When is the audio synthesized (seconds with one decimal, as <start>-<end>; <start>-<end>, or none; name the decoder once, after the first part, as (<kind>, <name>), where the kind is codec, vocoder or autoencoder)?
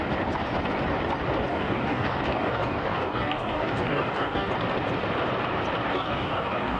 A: 1.5-4.5 (codec, DAC); 5.9-6.8